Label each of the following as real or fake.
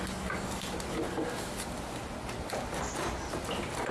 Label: real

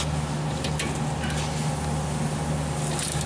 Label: real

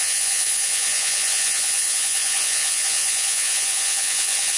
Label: fake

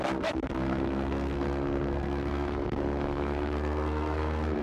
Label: fake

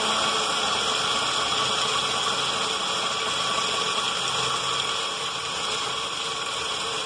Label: real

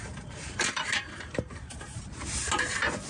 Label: fake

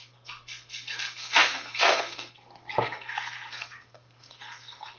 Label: fake